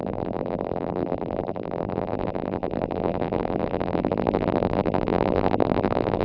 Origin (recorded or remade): remade